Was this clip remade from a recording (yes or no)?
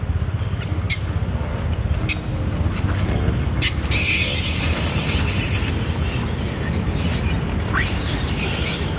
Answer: no